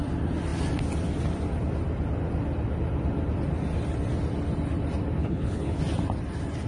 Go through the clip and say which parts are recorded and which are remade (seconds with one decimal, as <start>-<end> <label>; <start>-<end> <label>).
0.0-5.2 recorded; 5.2-5.8 remade; 5.8-6.7 recorded